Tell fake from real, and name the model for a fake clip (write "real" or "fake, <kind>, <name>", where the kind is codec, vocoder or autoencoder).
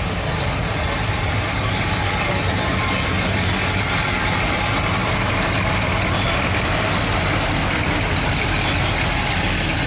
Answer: real